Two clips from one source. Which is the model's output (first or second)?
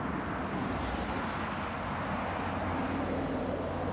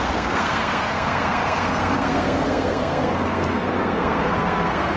second